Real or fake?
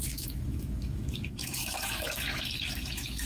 fake